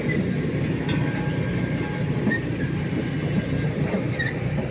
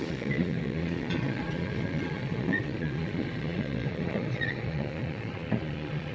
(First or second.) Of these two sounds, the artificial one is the second